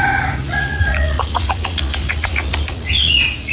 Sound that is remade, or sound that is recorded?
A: remade